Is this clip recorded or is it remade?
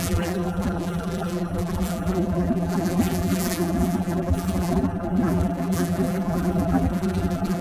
remade